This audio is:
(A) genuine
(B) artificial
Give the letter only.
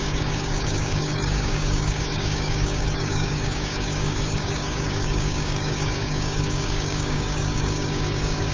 B